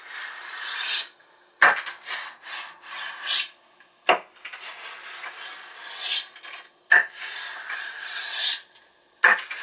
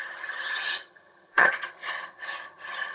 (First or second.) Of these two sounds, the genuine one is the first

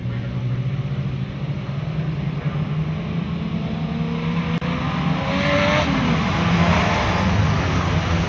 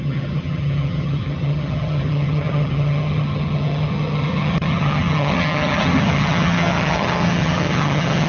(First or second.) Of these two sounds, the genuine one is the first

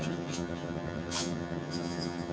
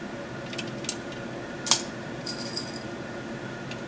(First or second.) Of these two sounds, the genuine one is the second